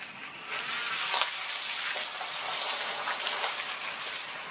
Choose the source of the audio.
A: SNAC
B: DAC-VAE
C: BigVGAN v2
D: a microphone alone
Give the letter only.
D